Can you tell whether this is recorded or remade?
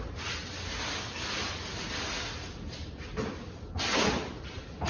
recorded